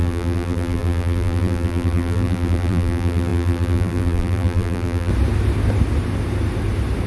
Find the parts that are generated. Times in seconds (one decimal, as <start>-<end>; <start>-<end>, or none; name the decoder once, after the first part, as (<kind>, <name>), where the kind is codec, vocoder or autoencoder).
0.0-5.1 (vocoder, BigVGAN v2)